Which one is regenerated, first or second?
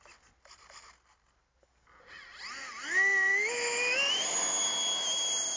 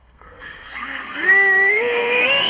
second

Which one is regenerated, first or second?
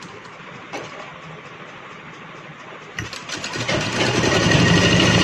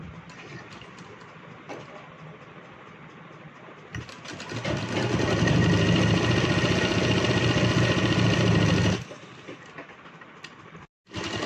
first